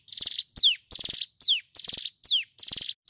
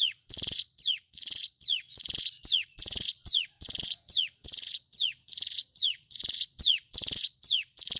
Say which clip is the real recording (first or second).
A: first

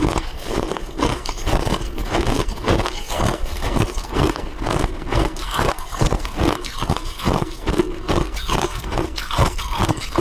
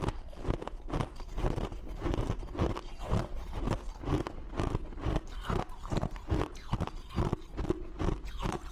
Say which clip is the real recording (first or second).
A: second